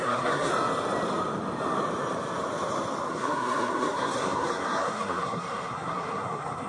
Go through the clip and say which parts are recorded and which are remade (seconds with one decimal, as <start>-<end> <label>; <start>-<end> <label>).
0.0-0.5 remade; 0.5-3.1 recorded; 3.1-6.7 remade